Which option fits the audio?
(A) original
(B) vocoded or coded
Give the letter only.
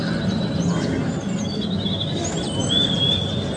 A